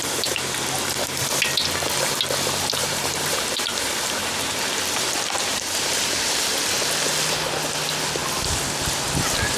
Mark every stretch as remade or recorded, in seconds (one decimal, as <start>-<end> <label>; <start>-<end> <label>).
0.0-2.8 recorded; 2.8-6.4 remade; 6.4-9.6 recorded